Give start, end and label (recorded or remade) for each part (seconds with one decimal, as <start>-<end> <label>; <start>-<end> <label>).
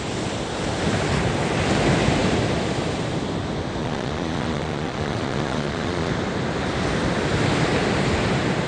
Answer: 0.0-3.8 recorded; 3.8-6.1 remade; 6.1-8.7 recorded